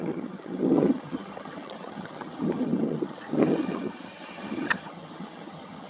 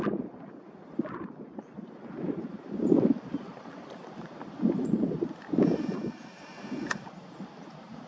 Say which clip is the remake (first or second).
first